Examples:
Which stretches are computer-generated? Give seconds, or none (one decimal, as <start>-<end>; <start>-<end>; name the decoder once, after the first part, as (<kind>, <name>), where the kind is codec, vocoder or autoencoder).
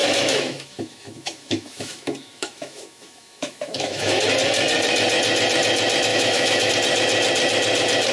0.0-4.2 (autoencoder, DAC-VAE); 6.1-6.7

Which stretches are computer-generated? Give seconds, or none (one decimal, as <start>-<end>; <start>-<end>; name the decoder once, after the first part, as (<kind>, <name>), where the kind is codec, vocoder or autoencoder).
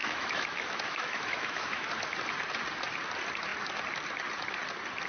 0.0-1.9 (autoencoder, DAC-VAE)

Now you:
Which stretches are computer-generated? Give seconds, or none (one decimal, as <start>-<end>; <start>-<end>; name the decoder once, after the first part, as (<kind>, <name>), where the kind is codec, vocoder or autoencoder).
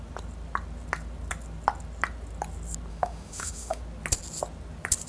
2.9-3.8 (autoencoder, DAC-VAE)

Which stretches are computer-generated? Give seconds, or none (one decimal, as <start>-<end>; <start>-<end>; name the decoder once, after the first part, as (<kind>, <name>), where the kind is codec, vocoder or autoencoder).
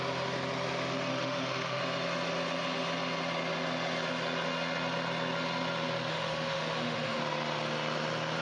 1.1-1.8 (autoencoder, DAC-VAE); 6.1-7.2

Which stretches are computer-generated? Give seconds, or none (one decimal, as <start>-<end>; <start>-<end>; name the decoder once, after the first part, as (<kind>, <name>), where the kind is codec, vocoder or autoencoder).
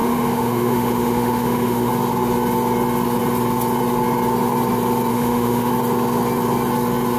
0.0-1.9 (autoencoder, DAC-VAE); 5.1-5.7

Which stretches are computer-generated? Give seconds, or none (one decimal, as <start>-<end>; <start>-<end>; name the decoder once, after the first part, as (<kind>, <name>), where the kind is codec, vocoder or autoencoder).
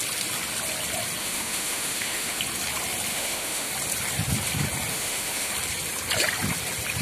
1.2-2.4 (autoencoder, DAC-VAE); 3.1-3.7; 4.9-5.5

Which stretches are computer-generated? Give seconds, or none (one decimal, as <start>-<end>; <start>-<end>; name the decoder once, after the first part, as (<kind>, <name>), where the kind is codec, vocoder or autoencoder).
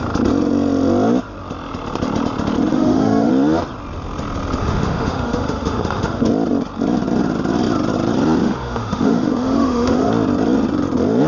2.7-3.3 (autoencoder, DAC-VAE); 4.6-6.3; 8.4-10.1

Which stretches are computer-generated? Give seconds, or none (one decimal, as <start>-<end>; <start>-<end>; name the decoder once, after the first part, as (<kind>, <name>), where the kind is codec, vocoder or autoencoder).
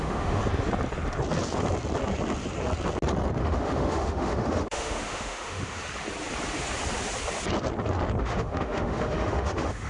0.0-0.4 (autoencoder, DAC-VAE); 3.4-5.8; 8.2-9.9